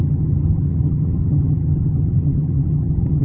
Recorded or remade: remade